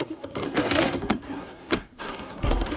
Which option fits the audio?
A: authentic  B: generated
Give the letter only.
B